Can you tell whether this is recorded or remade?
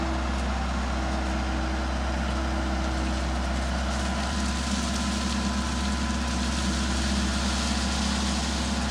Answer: recorded